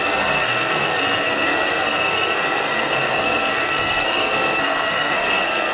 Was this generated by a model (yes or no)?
yes